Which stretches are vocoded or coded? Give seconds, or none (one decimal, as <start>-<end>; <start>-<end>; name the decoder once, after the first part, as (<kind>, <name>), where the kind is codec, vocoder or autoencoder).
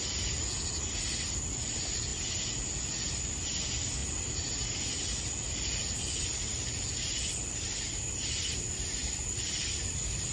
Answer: none